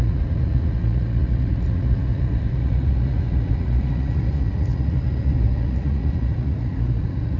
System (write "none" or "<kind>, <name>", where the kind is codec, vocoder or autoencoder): vocoder, Vocos